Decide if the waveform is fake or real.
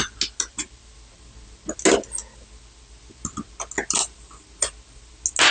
real